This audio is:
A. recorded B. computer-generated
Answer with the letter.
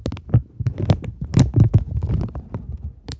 A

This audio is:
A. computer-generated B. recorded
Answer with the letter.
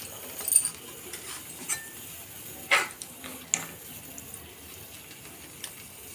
B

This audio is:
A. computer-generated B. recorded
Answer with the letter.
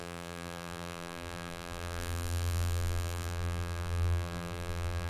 A